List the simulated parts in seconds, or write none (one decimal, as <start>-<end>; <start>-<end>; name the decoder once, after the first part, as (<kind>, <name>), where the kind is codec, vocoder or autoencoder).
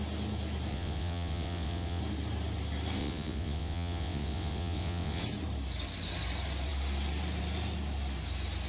0.7-2.0 (vocoder, WaveNeXt); 3.0-5.2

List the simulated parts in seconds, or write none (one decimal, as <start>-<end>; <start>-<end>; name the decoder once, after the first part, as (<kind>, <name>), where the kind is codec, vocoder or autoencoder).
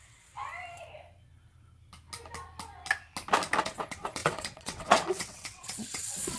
0.0-0.4 (vocoder, WaveNeXt); 3.6-6.4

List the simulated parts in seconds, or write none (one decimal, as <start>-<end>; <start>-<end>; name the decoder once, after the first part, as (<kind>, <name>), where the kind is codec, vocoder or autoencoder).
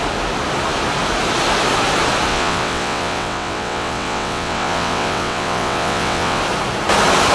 2.3-6.4 (vocoder, WaveNeXt)